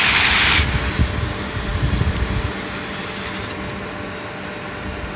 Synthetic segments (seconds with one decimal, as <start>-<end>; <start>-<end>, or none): none